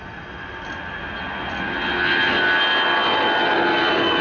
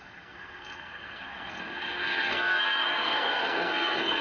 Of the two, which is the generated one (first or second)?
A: second